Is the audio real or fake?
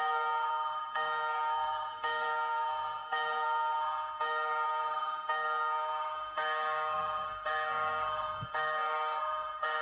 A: fake